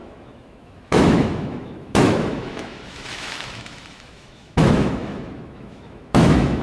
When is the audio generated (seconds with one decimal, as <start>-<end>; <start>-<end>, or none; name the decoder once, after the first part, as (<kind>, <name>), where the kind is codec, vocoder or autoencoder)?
0.0-6.6 (autoencoder, DAC-VAE)